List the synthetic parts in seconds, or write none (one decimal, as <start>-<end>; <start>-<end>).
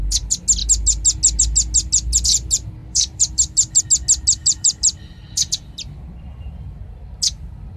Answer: 2.8-3.8; 4.4-6.8